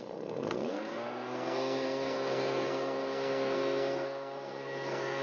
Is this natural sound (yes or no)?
no